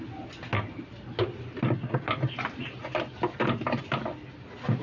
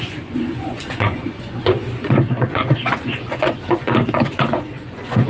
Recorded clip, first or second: first